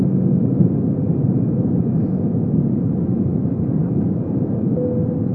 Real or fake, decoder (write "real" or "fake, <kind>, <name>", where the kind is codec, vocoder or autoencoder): real